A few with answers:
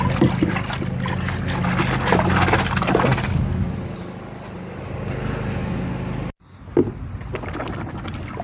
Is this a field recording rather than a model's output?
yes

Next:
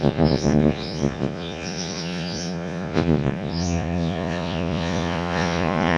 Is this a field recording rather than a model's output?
no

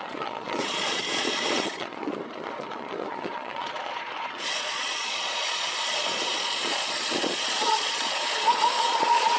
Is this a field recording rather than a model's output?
no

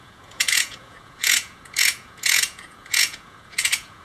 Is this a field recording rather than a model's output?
no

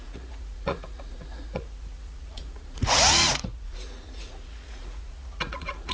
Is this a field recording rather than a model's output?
no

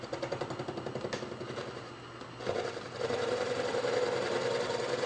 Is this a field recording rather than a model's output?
yes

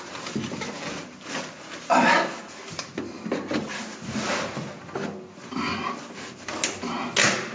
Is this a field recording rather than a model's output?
yes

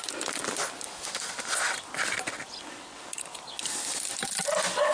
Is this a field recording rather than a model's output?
yes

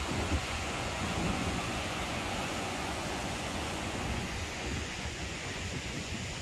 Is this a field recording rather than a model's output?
no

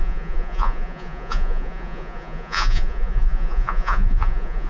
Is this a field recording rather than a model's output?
no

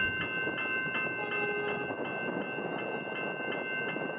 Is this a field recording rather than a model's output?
yes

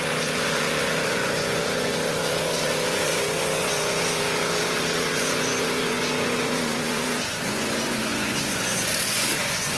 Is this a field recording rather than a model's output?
no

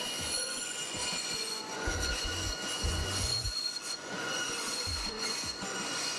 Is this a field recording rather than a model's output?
no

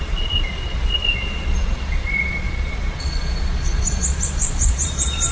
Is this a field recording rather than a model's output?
no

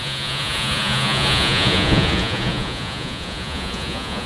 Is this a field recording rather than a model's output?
no